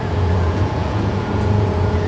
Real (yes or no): no